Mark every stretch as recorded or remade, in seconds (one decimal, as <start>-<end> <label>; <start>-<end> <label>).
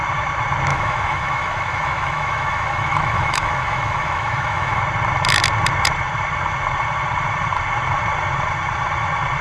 0.0-0.7 recorded; 0.7-4.8 remade; 4.8-9.4 recorded